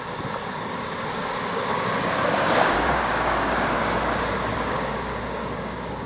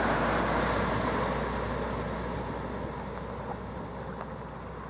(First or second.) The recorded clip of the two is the second